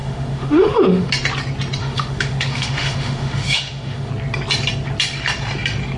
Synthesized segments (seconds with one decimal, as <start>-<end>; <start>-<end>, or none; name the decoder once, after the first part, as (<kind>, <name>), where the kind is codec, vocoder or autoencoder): 0.0-1.1 (autoencoder, DAC-VAE); 1.8-4.1